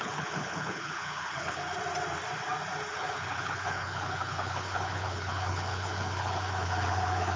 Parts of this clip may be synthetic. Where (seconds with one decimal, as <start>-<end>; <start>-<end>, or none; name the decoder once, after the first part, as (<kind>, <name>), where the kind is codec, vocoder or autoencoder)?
0.0-1.6 (codec, HILCodec); 2.9-7.4